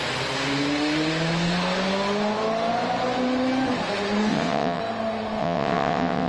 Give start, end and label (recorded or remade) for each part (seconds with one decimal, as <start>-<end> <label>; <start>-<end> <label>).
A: 0.0-4.3 recorded; 4.3-4.8 remade; 4.8-5.4 recorded; 5.4-6.3 remade